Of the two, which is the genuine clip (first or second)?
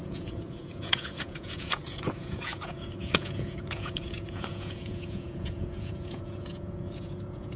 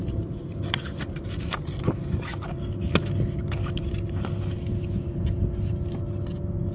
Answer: second